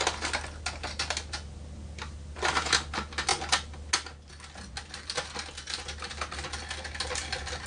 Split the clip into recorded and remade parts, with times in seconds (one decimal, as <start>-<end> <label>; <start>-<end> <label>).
0.0-7.7 recorded